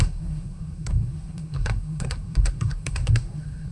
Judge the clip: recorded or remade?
remade